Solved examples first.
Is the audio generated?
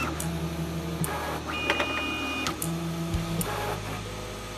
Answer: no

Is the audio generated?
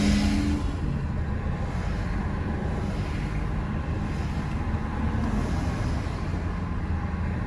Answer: no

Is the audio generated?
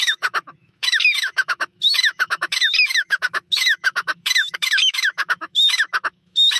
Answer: yes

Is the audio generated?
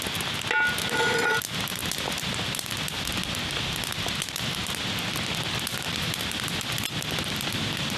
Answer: no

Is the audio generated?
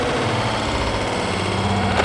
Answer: no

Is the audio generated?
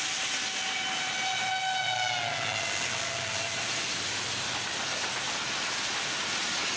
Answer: no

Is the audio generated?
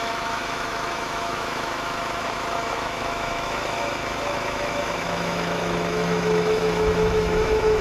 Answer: yes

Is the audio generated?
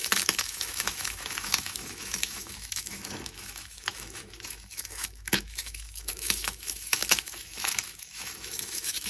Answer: yes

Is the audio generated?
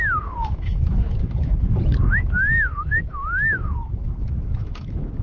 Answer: yes